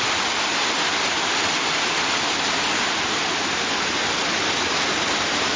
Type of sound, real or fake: real